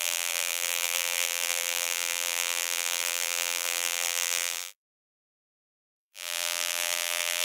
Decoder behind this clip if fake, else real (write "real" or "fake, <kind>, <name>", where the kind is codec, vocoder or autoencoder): fake, vocoder, BigVGAN v2